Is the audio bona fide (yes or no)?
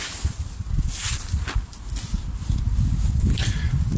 yes